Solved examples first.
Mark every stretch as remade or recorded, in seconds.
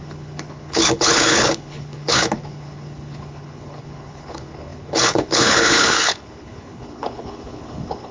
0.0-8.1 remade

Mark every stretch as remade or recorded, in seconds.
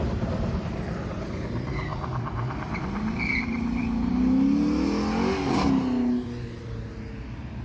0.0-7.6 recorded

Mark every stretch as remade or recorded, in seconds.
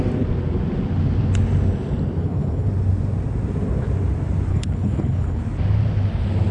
0.0-2.2 recorded; 2.2-2.7 remade; 2.7-4.5 recorded; 4.5-5.4 remade; 5.4-6.5 recorded